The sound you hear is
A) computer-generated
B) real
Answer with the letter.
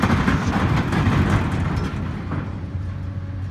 B